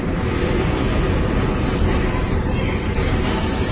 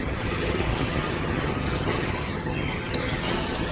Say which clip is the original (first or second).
first